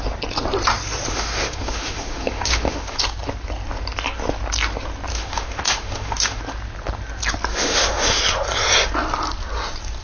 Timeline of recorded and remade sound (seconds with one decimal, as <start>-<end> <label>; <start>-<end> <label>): 0.0-1.1 recorded; 1.1-3.0 remade; 3.0-5.1 recorded; 5.1-6.4 remade; 6.4-7.5 recorded; 7.5-8.2 remade; 8.2-10.0 recorded